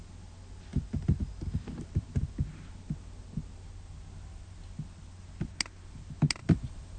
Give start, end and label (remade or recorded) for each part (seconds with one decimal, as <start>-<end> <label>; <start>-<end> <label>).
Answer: 0.0-6.4 recorded; 6.4-7.0 remade

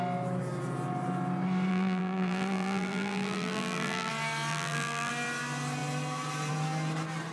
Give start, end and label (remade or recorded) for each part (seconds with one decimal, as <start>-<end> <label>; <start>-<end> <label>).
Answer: 0.0-1.7 recorded; 1.7-4.1 remade; 4.1-4.5 recorded; 4.5-5.1 remade; 5.1-7.3 recorded

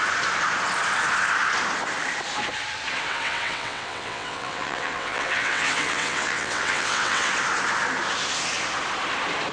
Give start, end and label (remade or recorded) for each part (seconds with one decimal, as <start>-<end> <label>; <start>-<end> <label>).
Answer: 0.0-3.1 recorded; 3.1-7.3 remade; 7.3-9.5 recorded